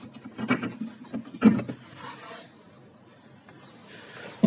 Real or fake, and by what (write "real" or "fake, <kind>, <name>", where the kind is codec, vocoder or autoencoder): real